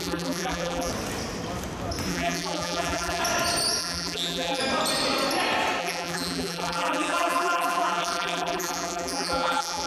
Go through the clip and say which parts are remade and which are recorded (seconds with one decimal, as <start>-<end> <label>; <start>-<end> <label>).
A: 0.0-0.9 remade; 0.9-2.1 recorded; 2.1-3.2 remade; 3.2-3.8 recorded; 3.8-4.6 remade; 4.6-5.8 recorded; 5.8-9.9 remade